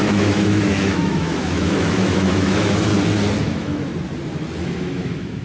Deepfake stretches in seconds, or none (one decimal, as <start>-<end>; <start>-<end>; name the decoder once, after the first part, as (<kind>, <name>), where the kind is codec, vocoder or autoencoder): 0.0-2.9 (autoencoder, DAC-VAE); 3.4-3.9; 4.6-5.4